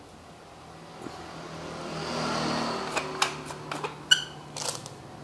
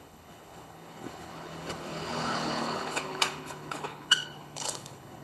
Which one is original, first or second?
first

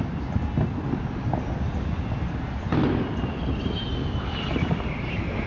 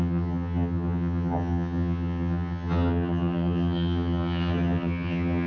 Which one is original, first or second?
first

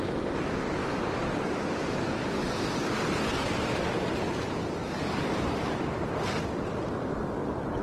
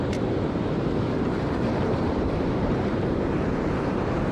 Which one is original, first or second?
first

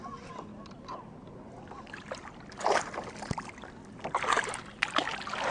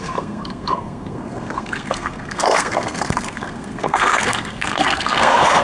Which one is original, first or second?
first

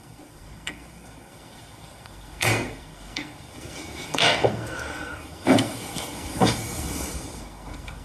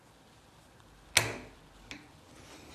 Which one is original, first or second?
second